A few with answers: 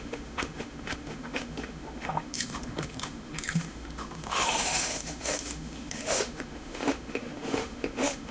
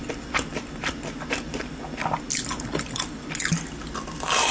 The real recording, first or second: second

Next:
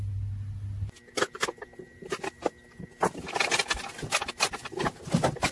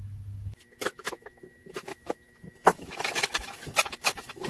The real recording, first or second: first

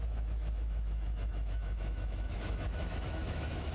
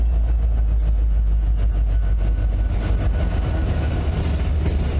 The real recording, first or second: second